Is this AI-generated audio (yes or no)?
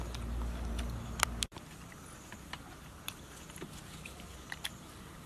yes